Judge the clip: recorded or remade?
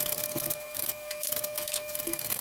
remade